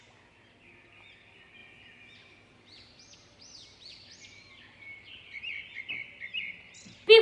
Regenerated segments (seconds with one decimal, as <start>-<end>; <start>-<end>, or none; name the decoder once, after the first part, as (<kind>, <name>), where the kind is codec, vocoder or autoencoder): none

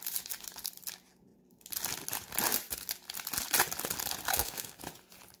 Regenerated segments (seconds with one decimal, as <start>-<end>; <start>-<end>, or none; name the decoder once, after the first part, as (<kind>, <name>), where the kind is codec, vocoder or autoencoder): 4.3-4.8 (codec, SNAC)

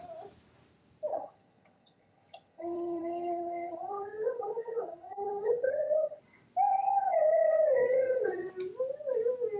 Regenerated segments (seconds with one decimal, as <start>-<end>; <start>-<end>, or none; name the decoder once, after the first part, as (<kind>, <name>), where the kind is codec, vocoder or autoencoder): 1.1-6.2 (vocoder, HiFi-GAN); 6.7-8.5

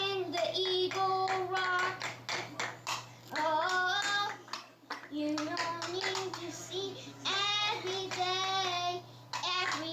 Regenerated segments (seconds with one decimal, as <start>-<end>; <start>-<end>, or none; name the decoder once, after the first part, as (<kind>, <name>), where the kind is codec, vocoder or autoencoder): none